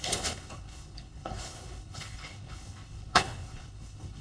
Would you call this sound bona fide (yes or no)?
no